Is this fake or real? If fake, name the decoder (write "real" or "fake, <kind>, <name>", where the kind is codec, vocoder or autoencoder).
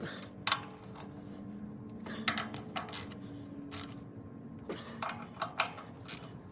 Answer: real